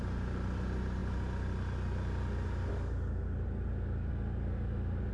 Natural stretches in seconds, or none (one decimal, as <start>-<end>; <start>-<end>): 0.0-5.1